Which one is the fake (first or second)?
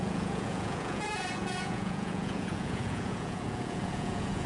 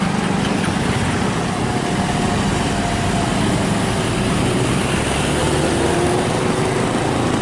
first